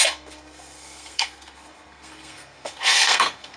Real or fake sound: fake